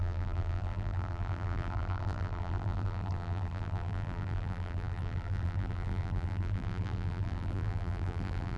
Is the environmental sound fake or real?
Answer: fake